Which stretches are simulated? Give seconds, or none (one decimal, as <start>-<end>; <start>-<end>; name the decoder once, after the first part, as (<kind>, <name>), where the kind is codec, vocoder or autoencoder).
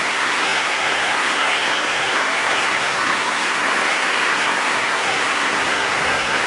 0.0-6.5 (codec, SNAC)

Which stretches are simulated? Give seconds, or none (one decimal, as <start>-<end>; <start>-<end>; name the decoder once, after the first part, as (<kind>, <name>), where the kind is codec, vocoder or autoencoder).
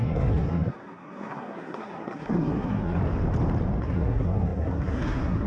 0.0-3.0 (codec, SNAC); 3.8-5.5